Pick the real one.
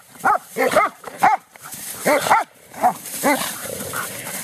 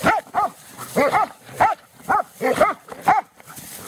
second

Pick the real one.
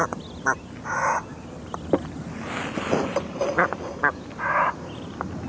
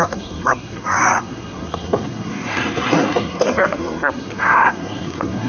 first